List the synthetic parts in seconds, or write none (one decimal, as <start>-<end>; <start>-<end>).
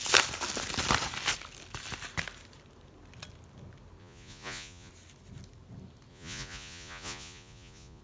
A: 4.0-4.9; 6.1-8.0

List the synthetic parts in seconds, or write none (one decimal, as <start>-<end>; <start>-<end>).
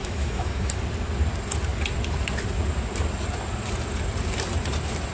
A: 0.0-0.8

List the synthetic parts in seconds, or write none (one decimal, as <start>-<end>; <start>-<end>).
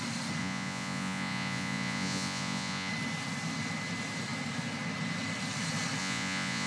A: 0.4-2.9; 6.0-6.7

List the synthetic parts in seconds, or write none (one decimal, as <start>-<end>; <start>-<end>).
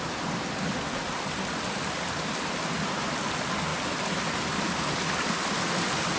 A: none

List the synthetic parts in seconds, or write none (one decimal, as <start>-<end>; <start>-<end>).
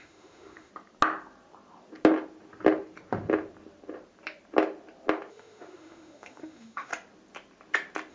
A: 0.0-0.7; 5.3-6.9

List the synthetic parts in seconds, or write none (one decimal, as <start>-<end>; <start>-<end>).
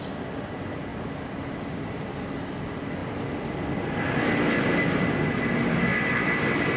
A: none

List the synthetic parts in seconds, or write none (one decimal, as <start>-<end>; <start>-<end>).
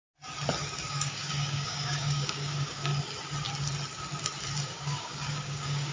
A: 0.9-2.9; 4.6-5.9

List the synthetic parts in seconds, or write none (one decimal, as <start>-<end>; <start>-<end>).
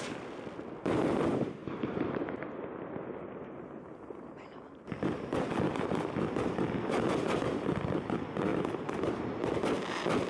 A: 1.6-2.2; 8.5-9.2